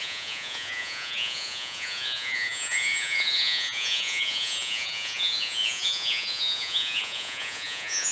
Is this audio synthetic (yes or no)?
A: yes